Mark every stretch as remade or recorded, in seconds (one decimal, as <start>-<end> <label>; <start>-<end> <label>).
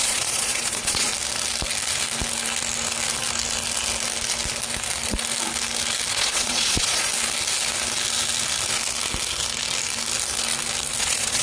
0.0-1.1 remade; 1.1-6.1 recorded; 6.1-7.1 remade; 7.1-11.0 recorded; 11.0-11.4 remade